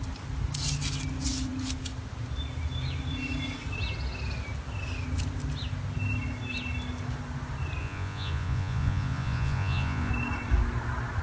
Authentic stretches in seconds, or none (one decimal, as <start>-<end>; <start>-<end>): 0.0-7.8; 10.1-11.2